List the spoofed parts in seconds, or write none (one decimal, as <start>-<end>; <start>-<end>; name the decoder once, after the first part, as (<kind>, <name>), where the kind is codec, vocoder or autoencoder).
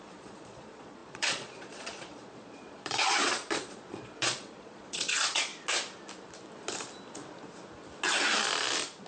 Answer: 0.0-5.5 (vocoder, Vocos)